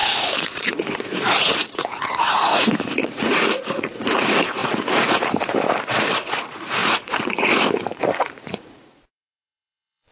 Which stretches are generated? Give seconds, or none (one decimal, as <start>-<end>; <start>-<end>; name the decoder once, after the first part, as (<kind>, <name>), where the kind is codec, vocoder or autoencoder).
0.0-10.1 (vocoder, Vocos)